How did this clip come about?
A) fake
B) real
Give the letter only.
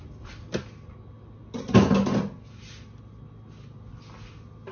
B